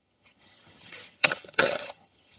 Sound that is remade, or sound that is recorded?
remade